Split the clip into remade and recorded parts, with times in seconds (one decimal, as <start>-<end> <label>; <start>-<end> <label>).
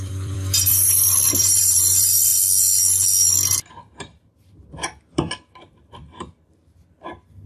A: 0.0-2.3 remade; 2.3-5.7 recorded; 5.7-7.5 remade